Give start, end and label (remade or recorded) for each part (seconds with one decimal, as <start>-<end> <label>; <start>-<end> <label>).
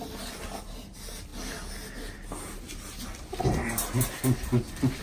0.0-5.0 recorded